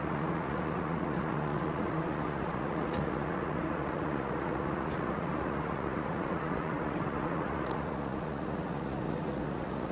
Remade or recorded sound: remade